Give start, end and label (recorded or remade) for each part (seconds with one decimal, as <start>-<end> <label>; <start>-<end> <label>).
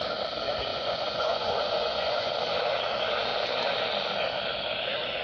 0.0-0.7 recorded; 0.7-2.3 remade; 2.3-5.2 recorded